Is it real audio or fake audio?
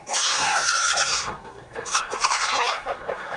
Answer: fake